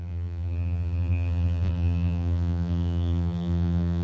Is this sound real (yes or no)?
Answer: no